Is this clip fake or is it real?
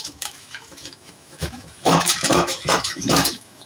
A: fake